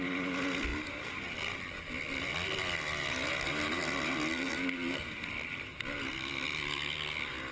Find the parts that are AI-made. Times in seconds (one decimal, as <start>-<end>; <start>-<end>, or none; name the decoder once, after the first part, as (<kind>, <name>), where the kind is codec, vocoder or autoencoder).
none